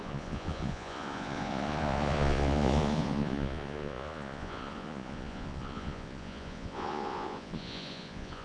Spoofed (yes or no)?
yes